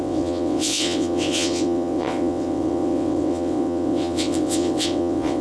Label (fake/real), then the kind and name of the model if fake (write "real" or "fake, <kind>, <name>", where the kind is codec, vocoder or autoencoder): fake, vocoder, WaveNeXt